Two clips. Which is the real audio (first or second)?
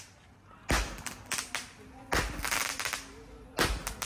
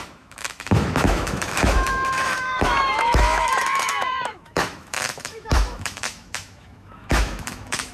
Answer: first